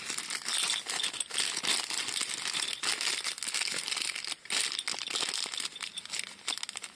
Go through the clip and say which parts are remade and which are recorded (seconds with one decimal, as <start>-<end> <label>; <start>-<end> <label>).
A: 0.0-7.0 recorded